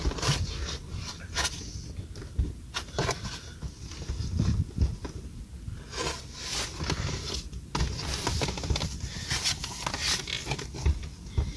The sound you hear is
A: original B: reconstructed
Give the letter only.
A